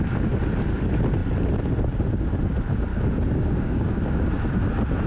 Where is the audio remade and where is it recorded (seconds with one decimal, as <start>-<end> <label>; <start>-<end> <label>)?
0.0-2.9 recorded; 2.9-4.3 remade; 4.3-5.1 recorded